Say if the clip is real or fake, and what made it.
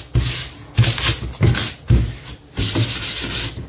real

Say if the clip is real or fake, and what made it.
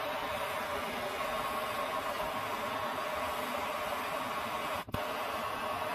real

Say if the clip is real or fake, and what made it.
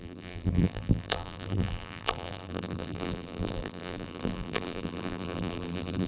fake, vocoder, BigVGAN v2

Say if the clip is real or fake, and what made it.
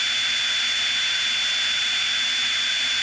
real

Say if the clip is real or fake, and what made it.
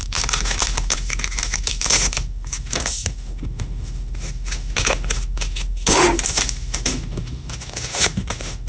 fake, autoencoder, DAC-VAE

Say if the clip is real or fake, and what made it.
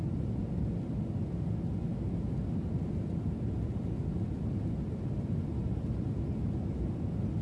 real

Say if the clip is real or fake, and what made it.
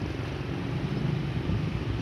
fake, vocoder, BigVGAN v2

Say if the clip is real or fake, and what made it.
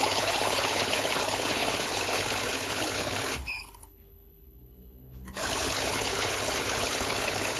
fake, codec, HILCodec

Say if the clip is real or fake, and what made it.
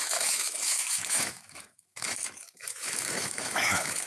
fake, autoencoder, DAC-VAE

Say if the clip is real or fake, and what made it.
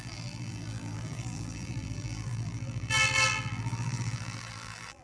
fake, vocoder, BigVGAN v2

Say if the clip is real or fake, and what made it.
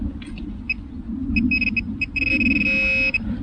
real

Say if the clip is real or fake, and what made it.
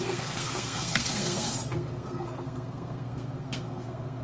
fake, codec, SNAC